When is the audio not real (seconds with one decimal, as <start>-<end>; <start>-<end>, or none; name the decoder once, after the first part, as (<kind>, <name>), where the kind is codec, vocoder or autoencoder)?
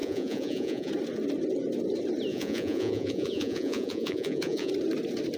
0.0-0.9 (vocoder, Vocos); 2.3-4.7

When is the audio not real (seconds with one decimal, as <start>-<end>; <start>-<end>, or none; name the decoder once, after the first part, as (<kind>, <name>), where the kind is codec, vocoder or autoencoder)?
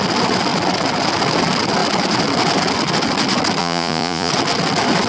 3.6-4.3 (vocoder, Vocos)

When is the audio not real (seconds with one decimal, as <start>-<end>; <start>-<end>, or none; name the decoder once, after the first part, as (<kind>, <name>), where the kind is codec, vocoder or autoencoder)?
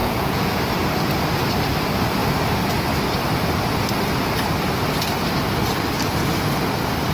0.0-0.6 (vocoder, Vocos)